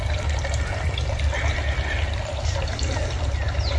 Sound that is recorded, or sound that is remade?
recorded